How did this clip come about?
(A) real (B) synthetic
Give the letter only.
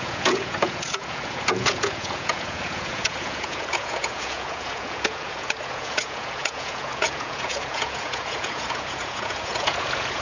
B